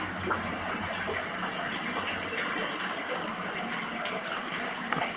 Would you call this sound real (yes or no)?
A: yes